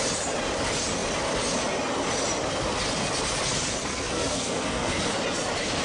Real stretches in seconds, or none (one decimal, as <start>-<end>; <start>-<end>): 0.0-3.9; 5.1-5.8